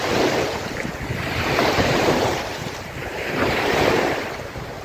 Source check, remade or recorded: remade